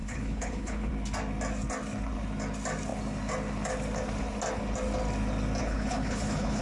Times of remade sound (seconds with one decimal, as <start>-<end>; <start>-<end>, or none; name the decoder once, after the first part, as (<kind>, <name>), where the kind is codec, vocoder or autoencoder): 0.0-0.9 (codec, HILCodec); 5.6-6.6